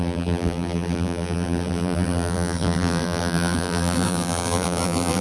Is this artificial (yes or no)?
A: yes